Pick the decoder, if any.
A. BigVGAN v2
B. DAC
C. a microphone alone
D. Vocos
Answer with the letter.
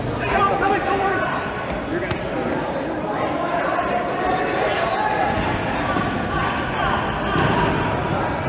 C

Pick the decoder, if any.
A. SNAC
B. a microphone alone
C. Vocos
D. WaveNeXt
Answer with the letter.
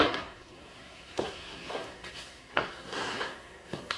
A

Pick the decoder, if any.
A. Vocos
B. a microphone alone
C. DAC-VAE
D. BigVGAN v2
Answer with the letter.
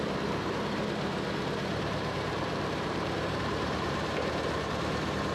D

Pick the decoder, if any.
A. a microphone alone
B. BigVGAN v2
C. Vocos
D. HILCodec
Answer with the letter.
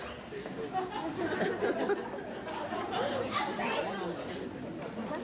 A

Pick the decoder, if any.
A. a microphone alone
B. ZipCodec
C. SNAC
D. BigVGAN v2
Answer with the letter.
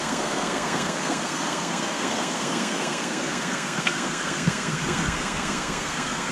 C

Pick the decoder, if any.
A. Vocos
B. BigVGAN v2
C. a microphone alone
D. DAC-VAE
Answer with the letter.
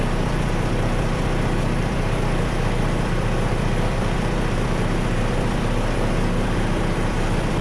B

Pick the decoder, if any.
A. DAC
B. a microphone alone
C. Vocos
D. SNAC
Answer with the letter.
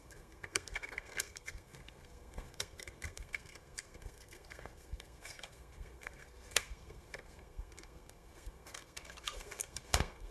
D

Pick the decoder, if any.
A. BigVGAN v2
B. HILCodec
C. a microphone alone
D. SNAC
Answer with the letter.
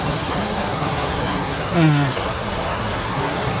D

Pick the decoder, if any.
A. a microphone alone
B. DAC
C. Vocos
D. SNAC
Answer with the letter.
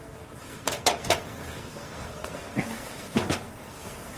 D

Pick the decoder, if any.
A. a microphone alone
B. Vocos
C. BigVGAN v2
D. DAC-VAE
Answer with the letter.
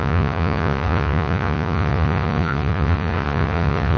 B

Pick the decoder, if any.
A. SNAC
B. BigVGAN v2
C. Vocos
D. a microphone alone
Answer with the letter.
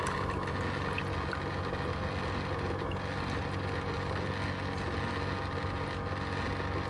D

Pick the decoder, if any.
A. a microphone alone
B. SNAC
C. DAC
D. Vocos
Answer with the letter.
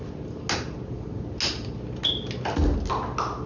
A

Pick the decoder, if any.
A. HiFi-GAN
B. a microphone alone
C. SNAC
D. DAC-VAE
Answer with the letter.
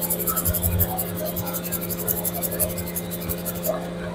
B